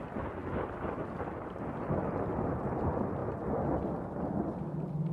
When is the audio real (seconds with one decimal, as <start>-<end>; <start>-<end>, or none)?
0.0-5.1